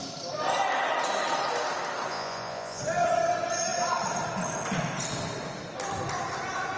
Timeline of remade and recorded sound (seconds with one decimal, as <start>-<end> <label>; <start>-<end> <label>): 0.0-2.1 recorded; 2.1-2.8 remade; 2.8-6.8 recorded